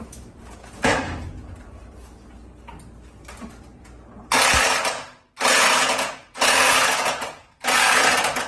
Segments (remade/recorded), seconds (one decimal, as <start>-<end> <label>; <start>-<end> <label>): 0.0-0.9 remade; 0.9-5.5 recorded; 5.5-8.5 remade

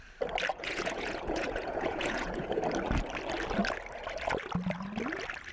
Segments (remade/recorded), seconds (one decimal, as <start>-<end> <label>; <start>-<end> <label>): 0.0-0.5 recorded; 0.5-2.6 remade; 2.6-5.5 recorded

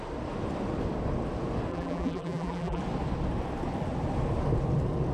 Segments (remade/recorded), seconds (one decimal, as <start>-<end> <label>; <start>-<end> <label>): 0.0-1.7 recorded; 1.7-2.8 remade; 2.8-5.1 recorded

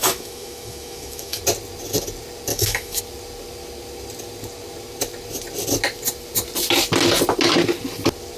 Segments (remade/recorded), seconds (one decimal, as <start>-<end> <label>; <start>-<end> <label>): 0.0-1.4 remade; 1.4-2.5 recorded; 2.5-3.0 remade; 3.0-8.4 recorded

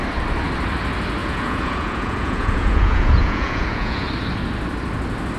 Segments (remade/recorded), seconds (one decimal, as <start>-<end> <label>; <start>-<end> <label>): 0.0-1.2 recorded; 1.2-4.1 remade; 4.1-5.4 recorded

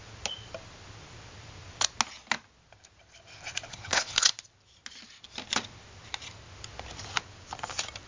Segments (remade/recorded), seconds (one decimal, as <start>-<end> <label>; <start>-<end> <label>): 0.0-3.7 recorded; 3.7-4.3 remade; 4.3-8.1 recorded

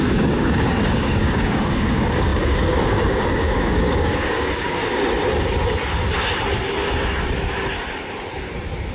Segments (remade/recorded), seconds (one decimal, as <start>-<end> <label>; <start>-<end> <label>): 0.0-4.8 remade; 4.8-8.9 recorded

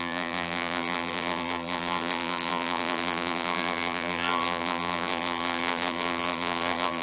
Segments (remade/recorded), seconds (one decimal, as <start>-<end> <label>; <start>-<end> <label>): 0.0-7.0 remade